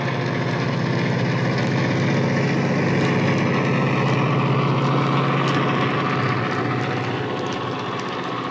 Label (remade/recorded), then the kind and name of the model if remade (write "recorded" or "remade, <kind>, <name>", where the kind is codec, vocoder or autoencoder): recorded